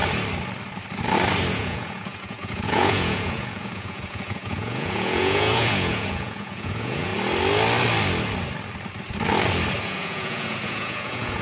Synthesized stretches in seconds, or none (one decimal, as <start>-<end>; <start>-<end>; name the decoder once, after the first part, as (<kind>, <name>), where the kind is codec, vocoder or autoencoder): 1.5-7.1 (vocoder, Vocos); 9.8-11.4